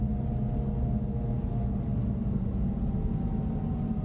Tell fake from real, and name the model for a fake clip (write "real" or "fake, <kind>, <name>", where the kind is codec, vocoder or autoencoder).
real